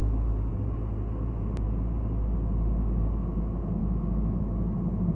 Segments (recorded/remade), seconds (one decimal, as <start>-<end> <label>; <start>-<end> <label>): 0.0-0.5 remade; 0.5-3.8 recorded; 3.8-4.4 remade; 4.4-5.1 recorded